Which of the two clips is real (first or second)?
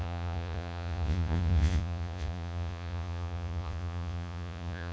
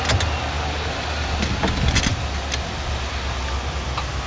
second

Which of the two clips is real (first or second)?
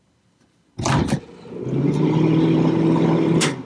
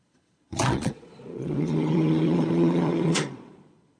first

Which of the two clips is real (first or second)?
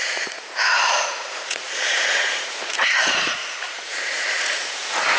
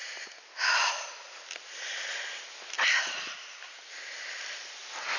second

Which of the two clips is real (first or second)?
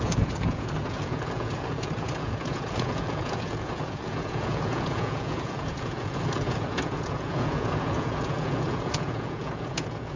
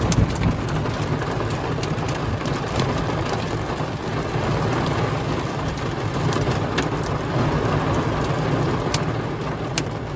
second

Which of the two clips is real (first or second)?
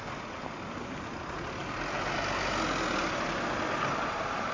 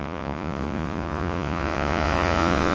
first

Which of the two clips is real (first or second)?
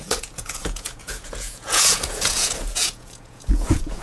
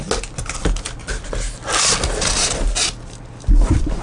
second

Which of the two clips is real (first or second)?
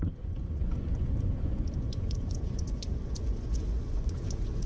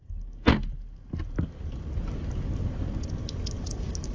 second